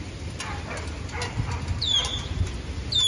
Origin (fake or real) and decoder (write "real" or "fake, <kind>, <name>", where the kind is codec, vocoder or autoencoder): real